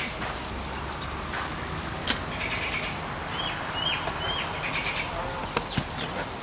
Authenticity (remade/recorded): recorded